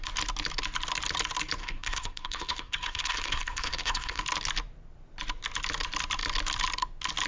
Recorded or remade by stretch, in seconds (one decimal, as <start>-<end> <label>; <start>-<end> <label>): 0.0-1.6 recorded; 1.6-4.2 remade; 4.2-7.3 recorded